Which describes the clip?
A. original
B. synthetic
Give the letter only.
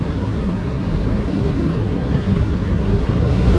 B